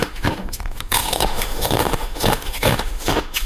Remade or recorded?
remade